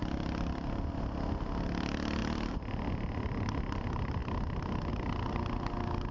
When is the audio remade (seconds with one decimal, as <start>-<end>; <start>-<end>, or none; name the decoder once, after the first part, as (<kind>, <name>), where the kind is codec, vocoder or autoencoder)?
0.0-0.9 (vocoder, BigVGAN v2); 2.2-2.9